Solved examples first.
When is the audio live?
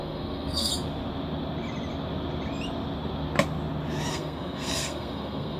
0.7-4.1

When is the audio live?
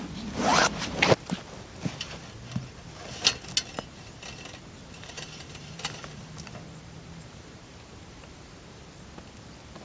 0.0-0.5; 1.1-4.8; 8.8-9.8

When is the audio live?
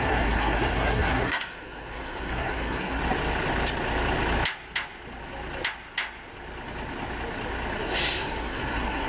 3.0-7.8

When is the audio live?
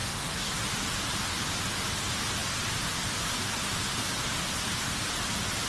0.5-5.7